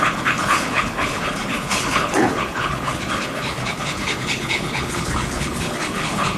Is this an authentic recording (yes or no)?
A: no